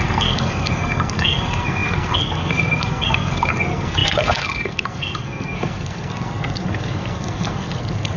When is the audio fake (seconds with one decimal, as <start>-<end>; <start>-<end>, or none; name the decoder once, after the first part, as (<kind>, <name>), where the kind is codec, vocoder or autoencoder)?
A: 0.0-8.2 (codec, SNAC)